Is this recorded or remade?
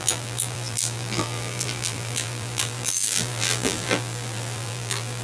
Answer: remade